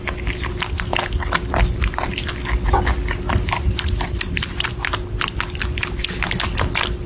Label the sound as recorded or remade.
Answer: recorded